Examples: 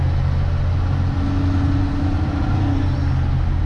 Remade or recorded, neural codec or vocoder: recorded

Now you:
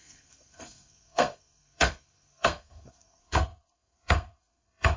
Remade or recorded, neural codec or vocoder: remade, codec, SNAC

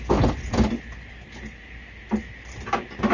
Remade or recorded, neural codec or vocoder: recorded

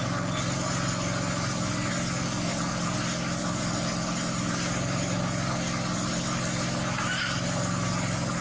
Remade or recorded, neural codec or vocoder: recorded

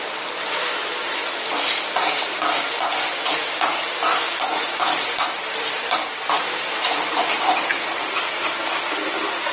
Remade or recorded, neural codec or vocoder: recorded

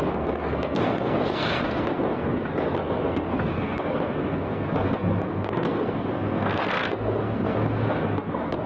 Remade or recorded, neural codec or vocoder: remade, codec, SNAC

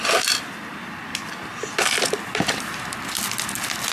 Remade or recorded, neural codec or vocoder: recorded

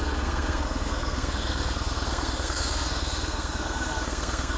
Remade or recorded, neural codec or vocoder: remade, codec, SNAC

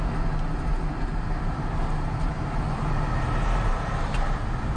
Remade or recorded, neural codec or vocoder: recorded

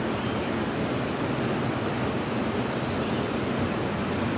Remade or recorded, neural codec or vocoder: recorded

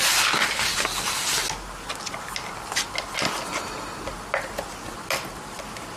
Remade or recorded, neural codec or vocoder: recorded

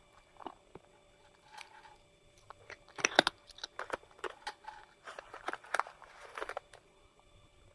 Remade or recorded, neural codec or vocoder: recorded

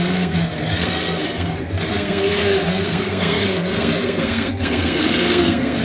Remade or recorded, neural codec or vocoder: remade, codec, SNAC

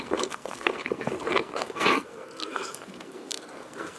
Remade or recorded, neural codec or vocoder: remade, codec, SNAC